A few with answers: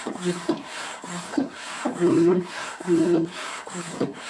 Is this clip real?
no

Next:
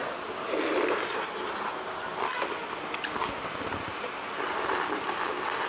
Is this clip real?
yes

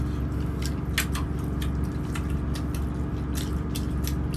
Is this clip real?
yes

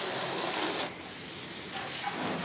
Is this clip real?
yes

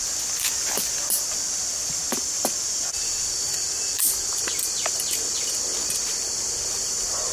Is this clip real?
yes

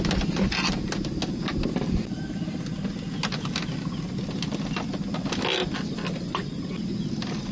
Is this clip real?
yes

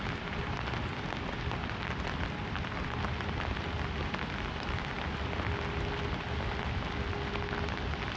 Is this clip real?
yes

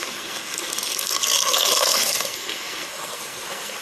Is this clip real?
no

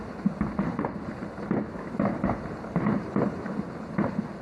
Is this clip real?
yes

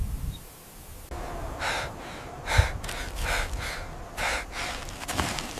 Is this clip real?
yes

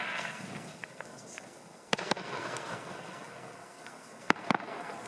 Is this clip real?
no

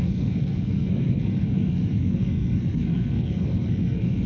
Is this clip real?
no